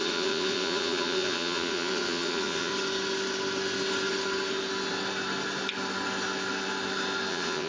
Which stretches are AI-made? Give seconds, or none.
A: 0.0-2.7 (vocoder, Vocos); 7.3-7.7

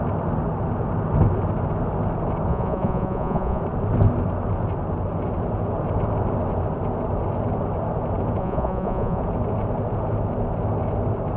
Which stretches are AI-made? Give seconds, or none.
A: 2.5-3.6 (vocoder, Vocos); 8.4-9.2

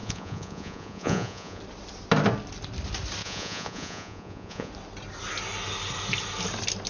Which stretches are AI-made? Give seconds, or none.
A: 0.0-1.6 (vocoder, Vocos); 3.2-4.7

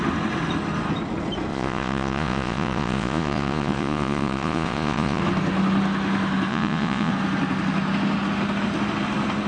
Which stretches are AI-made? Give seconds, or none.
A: 1.5-5.2 (vocoder, Vocos); 6.5-7.1